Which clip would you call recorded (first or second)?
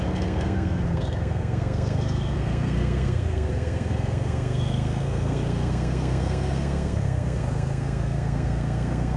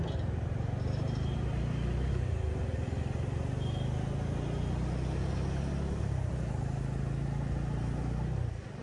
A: second